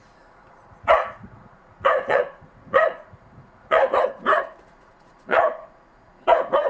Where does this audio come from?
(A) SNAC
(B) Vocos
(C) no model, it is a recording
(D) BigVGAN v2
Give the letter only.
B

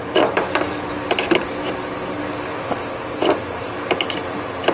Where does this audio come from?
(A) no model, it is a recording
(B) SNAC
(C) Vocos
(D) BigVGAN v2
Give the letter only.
A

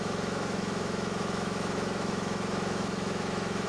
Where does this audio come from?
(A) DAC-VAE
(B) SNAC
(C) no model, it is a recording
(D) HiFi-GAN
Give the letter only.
A